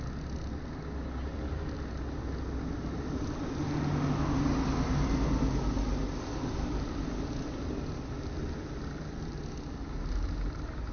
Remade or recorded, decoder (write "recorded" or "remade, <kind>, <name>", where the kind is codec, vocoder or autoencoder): recorded